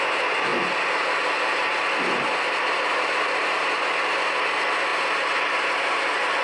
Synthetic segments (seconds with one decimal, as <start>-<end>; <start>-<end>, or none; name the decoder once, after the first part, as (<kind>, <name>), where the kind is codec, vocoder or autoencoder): none